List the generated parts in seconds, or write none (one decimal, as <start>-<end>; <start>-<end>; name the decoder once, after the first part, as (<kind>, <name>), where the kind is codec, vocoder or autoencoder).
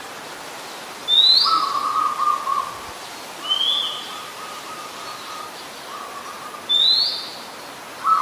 none